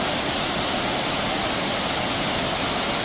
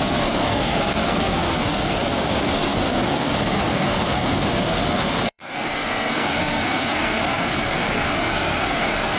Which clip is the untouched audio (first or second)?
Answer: first